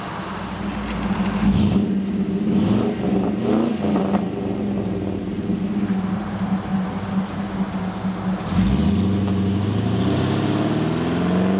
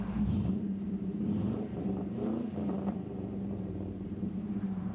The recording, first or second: first